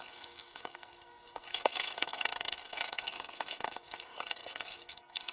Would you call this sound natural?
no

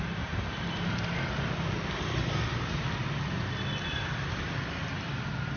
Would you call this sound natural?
yes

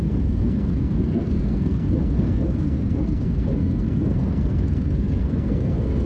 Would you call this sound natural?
no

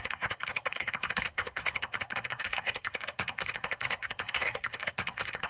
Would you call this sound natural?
no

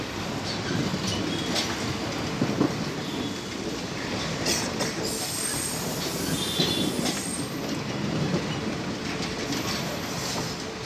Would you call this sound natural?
yes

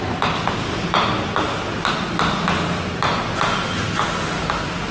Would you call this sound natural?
yes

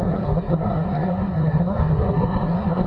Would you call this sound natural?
no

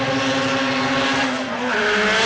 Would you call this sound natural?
yes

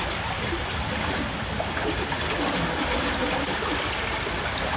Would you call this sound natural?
yes